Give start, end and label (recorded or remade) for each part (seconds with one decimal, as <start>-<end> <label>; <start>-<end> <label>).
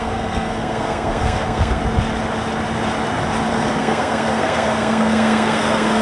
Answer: 0.0-1.8 remade; 1.8-3.5 recorded; 3.5-6.0 remade